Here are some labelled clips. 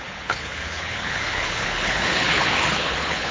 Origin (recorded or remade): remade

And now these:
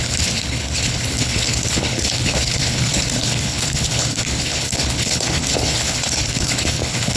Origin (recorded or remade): remade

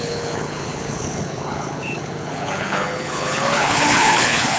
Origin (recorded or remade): remade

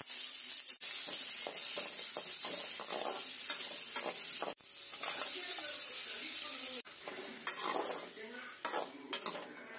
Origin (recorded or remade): recorded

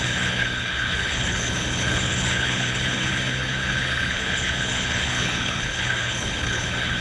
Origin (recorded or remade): remade